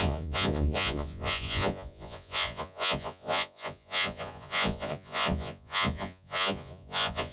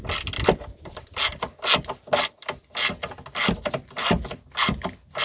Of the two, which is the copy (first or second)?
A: first